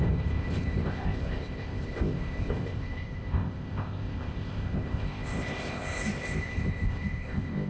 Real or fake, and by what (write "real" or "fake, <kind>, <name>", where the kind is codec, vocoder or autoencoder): fake, codec, ZipCodec